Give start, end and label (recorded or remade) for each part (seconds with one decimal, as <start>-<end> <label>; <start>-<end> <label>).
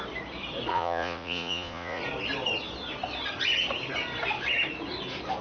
0.0-0.7 recorded; 0.7-2.0 remade; 2.0-5.4 recorded